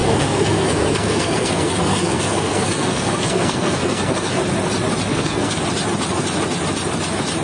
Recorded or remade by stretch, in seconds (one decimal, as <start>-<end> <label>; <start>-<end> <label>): 0.0-4.4 remade; 4.4-5.1 recorded; 5.1-5.6 remade; 5.6-7.4 recorded